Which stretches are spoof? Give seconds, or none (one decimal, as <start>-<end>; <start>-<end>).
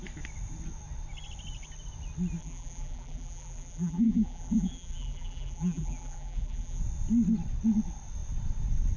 2.4-6.8